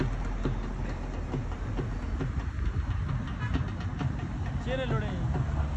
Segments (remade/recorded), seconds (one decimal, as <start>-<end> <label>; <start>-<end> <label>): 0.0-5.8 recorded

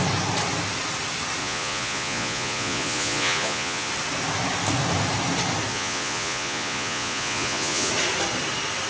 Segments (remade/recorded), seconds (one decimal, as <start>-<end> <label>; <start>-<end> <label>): 0.0-1.4 recorded; 1.4-3.9 remade; 3.9-5.7 recorded; 5.7-7.9 remade; 7.9-8.9 recorded

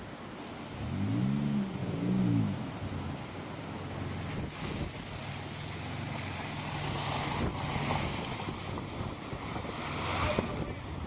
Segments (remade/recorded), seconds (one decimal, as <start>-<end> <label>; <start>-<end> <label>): 0.0-11.1 recorded

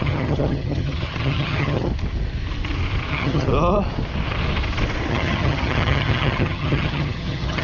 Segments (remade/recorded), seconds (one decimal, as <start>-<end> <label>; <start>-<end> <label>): 0.0-1.9 remade; 1.9-3.1 recorded; 3.1-3.5 remade; 3.5-5.1 recorded; 5.1-7.6 remade

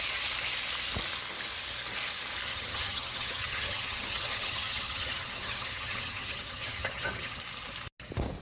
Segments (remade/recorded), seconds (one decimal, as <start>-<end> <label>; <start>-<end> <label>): 0.0-2.5 recorded; 2.5-7.4 remade; 7.4-8.4 recorded

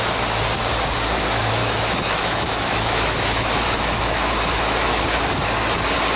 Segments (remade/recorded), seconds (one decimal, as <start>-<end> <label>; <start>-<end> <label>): 0.0-1.6 recorded; 1.6-5.0 remade; 5.0-6.2 recorded

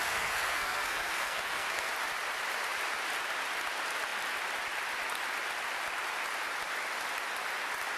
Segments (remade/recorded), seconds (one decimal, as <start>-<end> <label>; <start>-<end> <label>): 0.0-1.9 remade; 1.9-8.0 recorded